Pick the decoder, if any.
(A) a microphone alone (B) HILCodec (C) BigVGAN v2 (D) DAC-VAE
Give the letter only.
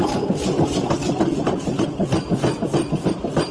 A